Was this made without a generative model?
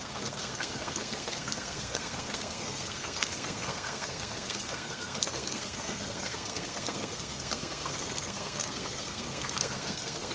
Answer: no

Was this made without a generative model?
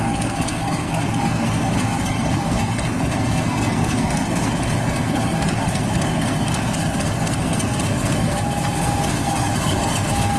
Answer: no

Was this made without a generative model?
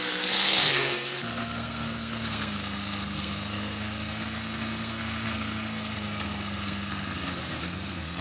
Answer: no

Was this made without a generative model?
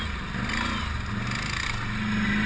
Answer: yes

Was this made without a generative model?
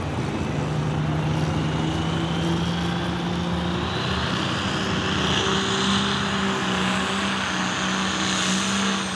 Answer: yes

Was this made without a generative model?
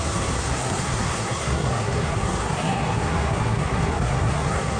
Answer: no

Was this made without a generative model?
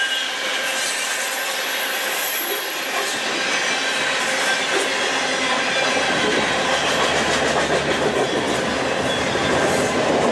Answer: yes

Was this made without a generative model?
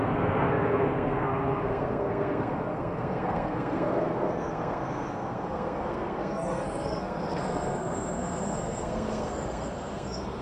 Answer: no